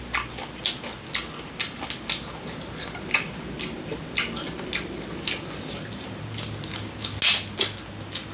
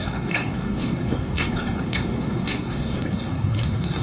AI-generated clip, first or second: second